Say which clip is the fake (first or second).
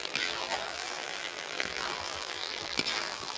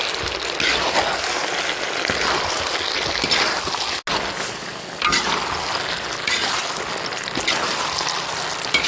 first